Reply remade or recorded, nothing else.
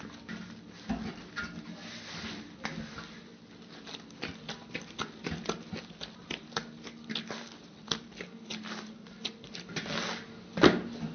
recorded